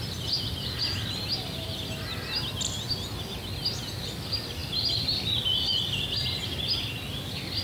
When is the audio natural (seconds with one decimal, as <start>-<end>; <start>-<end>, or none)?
0.0-7.6